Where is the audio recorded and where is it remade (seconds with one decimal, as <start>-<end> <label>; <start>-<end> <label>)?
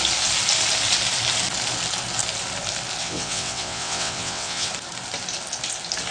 0.0-3.0 recorded; 3.0-4.7 remade; 4.7-6.1 recorded